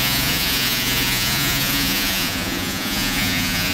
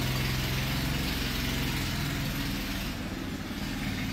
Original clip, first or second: second